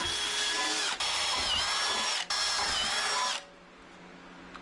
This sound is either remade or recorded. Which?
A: recorded